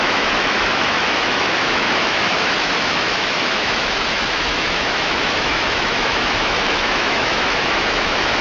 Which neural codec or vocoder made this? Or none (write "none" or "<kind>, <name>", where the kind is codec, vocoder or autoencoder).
autoencoder, DAC-VAE